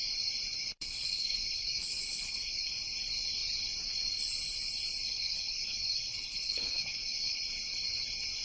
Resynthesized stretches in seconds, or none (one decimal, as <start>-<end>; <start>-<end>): 0.6-2.7; 5.1-7.4